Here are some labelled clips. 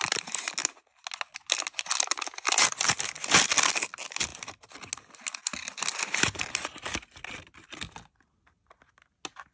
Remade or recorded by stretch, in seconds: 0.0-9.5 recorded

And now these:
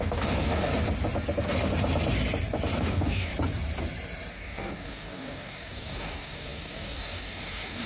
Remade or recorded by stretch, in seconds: 0.0-0.7 remade; 0.7-2.8 recorded; 2.8-3.3 remade; 3.3-4.3 recorded; 4.3-7.9 remade

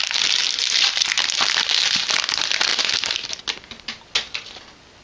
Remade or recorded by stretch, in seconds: 0.0-5.0 recorded

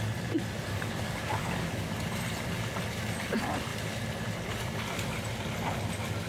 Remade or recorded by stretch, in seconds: 0.0-0.7 recorded; 0.7-1.9 remade; 1.9-6.3 recorded

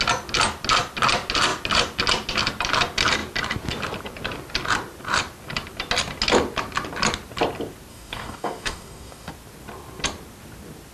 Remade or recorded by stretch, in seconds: 0.0-7.9 recorded; 7.9-9.3 remade; 9.3-10.9 recorded